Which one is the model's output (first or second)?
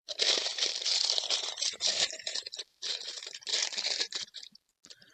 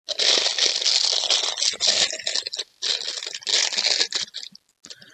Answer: first